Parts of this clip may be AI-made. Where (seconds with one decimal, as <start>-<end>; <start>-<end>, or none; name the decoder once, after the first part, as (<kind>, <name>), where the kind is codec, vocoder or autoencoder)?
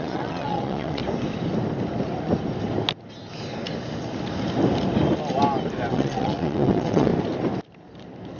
0.0-1.0 (vocoder, WaveNeXt); 5.9-7.1